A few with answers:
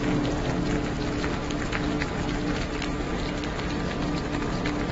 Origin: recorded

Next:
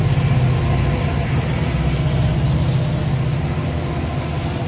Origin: recorded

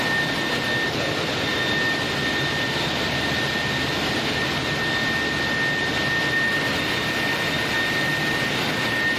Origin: recorded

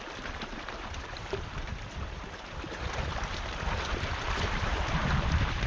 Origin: remade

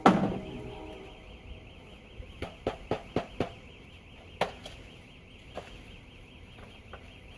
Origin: recorded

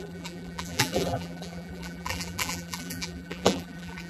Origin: remade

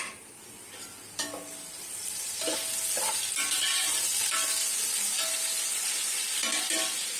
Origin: recorded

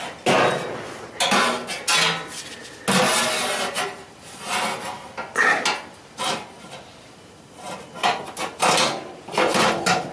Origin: recorded